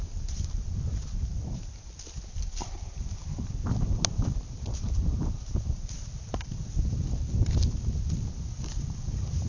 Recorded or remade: remade